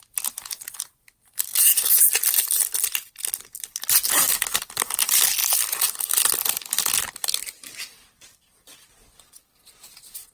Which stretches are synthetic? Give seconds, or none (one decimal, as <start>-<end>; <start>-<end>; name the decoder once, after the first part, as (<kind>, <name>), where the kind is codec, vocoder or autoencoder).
none